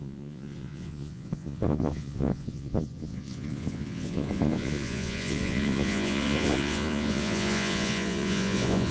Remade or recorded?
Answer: remade